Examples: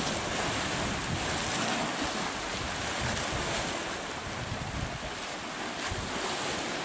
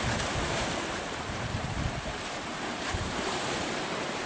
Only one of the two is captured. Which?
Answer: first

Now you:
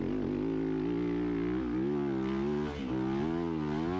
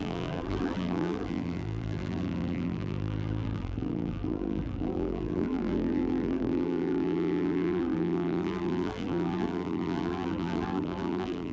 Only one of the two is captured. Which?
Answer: first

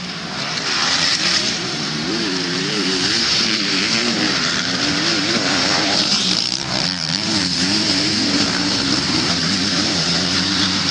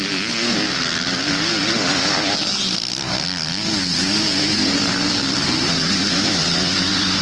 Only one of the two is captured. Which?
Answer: second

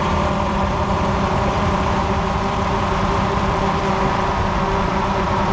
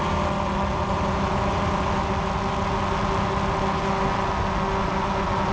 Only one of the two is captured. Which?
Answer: second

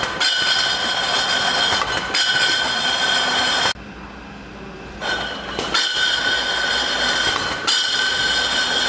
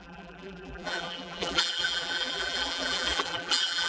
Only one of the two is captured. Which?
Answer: first